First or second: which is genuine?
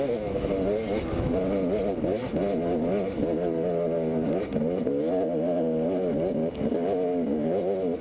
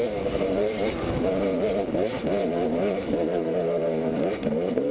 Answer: first